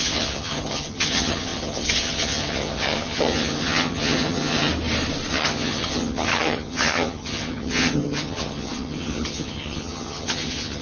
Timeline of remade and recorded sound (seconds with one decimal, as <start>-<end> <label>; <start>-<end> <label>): 0.0-4.7 remade; 4.7-5.3 recorded; 5.3-10.8 remade